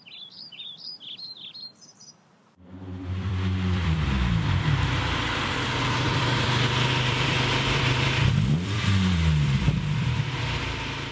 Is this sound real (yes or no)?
no